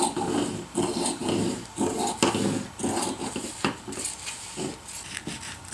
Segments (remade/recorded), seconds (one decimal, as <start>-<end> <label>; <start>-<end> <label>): 0.0-5.7 recorded